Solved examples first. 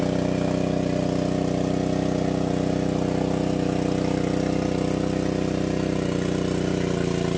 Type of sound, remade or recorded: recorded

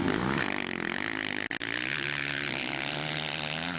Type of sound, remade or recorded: recorded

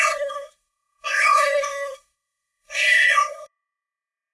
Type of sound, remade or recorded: remade